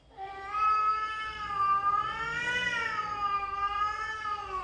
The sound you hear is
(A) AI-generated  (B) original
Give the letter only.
B